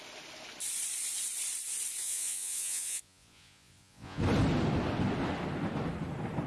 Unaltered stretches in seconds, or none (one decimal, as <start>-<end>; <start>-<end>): 0.0-2.0; 4.2-6.5